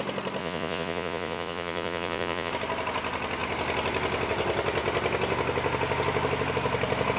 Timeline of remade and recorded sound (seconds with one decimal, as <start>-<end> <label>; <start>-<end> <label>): 0.0-0.4 recorded; 0.4-2.5 remade; 2.5-7.2 recorded